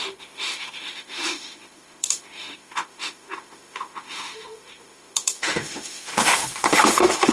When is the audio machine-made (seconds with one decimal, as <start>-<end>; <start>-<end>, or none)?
0.0-7.3